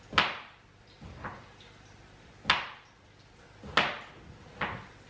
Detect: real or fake real